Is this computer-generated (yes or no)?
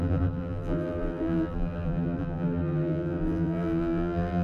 yes